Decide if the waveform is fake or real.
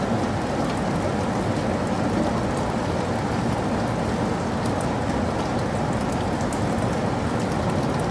real